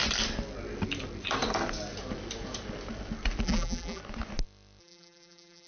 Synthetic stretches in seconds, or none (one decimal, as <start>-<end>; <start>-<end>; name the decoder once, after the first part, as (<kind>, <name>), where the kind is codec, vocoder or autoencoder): 3.4-4.0 (vocoder, BigVGAN v2); 4.8-5.7